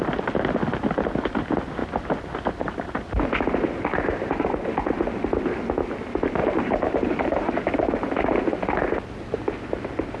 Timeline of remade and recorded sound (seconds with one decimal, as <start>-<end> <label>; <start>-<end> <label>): 0.0-6.4 recorded; 6.4-7.5 remade; 7.5-10.2 recorded